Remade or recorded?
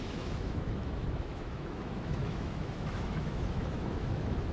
remade